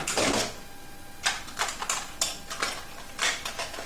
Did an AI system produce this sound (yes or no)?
no